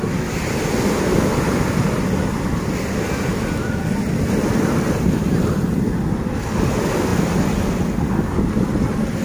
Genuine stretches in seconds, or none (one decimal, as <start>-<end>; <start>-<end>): 0.0-9.2